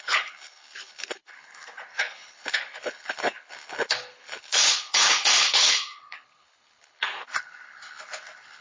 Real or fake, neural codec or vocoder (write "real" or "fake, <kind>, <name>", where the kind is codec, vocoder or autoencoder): fake, codec, HILCodec